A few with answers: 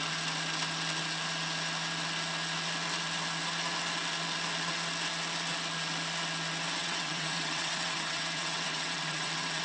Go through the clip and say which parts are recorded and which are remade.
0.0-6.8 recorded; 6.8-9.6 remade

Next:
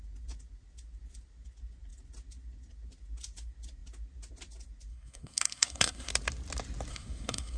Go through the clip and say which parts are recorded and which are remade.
0.0-4.9 recorded; 4.9-6.1 remade; 6.1-6.9 recorded; 6.9-7.6 remade

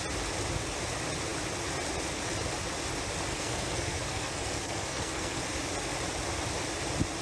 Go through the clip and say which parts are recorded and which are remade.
0.0-3.3 recorded; 3.3-5.4 remade; 5.4-7.2 recorded

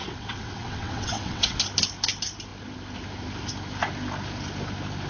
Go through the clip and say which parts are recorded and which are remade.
0.0-1.6 remade; 1.6-5.1 recorded

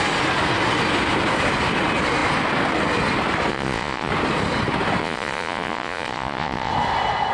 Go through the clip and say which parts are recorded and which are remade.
0.0-3.5 recorded; 3.5-4.1 remade; 4.1-5.0 recorded; 5.0-6.7 remade; 6.7-7.3 recorded

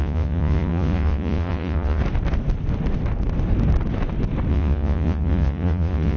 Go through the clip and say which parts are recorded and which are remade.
0.0-2.0 remade; 2.0-4.5 recorded; 4.5-6.2 remade

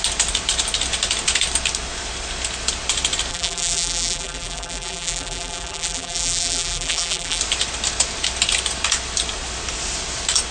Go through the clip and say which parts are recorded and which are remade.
0.0-3.3 recorded; 3.3-7.4 remade; 7.4-10.5 recorded